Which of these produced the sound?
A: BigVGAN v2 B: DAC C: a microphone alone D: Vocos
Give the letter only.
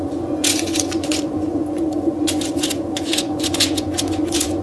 D